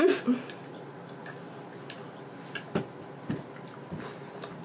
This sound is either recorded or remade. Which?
recorded